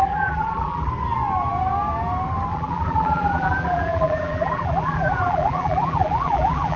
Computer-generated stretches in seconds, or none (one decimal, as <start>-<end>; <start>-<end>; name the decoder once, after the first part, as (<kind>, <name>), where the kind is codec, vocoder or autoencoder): 0.0-0.9 (vocoder, BigVGAN v2); 2.5-6.8